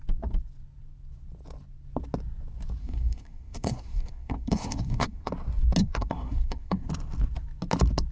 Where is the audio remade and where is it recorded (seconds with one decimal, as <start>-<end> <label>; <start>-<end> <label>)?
0.0-2.8 recorded; 2.8-5.3 remade; 5.3-5.8 recorded; 5.8-6.9 remade; 6.9-8.1 recorded